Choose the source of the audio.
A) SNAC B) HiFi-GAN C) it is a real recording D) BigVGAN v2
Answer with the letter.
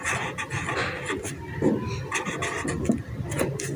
C